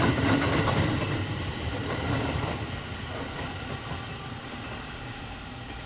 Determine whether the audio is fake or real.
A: real